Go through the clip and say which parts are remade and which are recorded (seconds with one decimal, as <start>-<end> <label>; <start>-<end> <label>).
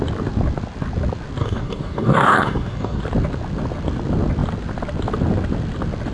0.0-1.4 recorded; 1.4-3.0 remade; 3.0-6.1 recorded